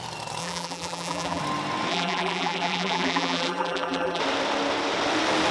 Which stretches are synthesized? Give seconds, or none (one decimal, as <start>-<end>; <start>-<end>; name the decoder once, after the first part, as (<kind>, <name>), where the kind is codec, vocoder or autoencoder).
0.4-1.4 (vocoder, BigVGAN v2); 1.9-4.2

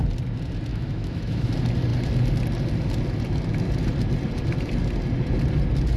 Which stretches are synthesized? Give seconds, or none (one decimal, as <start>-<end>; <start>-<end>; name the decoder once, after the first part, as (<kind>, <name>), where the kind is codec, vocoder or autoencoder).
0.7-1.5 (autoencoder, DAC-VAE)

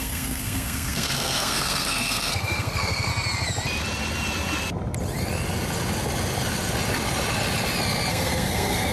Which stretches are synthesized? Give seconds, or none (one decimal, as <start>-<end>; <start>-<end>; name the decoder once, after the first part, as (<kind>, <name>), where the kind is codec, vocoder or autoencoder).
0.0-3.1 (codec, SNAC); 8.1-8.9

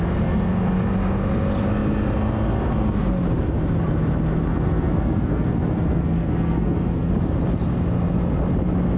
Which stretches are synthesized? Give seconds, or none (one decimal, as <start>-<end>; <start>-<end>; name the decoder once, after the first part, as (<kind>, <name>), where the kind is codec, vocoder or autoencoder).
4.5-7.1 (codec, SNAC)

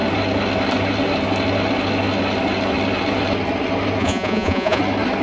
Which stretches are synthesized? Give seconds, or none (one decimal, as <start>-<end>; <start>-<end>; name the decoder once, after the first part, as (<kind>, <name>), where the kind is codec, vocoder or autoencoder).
4.0-4.8 (vocoder, Vocos)